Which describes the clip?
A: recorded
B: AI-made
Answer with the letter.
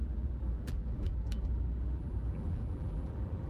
B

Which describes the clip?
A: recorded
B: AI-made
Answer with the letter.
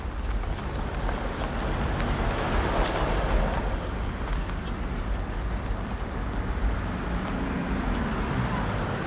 A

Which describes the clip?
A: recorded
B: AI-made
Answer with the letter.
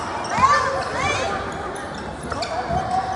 A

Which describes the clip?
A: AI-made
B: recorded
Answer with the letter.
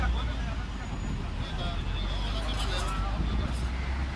B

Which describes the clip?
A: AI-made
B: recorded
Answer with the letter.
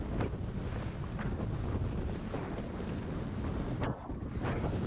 B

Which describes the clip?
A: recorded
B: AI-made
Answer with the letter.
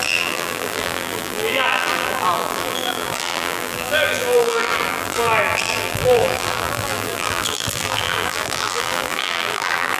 B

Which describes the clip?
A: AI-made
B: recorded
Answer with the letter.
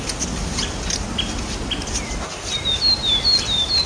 B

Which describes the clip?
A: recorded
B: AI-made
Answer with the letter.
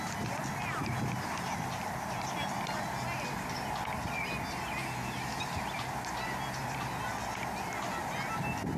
A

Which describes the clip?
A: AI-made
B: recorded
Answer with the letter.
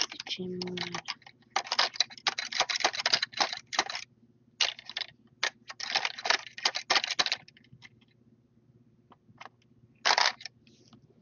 B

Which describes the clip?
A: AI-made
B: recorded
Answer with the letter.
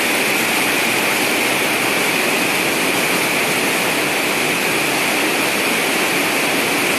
B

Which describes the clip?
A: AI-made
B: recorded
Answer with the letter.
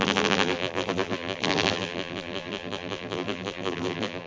A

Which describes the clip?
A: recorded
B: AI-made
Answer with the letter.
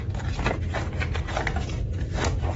A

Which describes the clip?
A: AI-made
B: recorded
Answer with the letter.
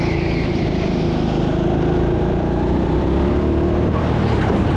B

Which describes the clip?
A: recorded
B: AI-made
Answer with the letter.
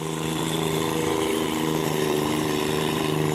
B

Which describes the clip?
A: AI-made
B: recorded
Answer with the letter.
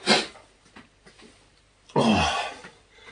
B